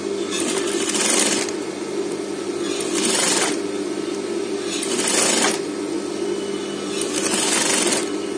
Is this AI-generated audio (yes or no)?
no